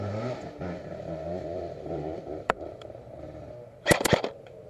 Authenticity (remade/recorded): remade